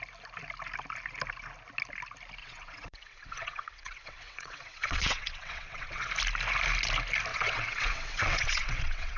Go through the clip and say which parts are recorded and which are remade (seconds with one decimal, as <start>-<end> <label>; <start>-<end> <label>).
0.0-2.4 recorded; 2.4-6.1 remade; 6.1-7.3 recorded; 7.3-9.2 remade